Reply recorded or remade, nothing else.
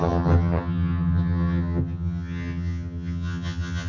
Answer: remade